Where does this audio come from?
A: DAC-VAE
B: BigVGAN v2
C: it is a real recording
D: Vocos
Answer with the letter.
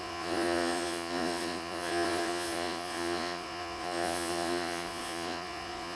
D